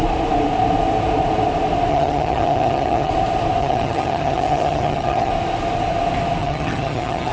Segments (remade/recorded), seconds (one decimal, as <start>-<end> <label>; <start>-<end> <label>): 0.0-1.9 recorded; 1.9-3.1 remade; 3.1-3.6 recorded; 3.6-5.3 remade; 5.3-6.4 recorded; 6.4-7.3 remade